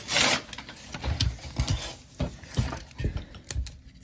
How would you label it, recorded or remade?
recorded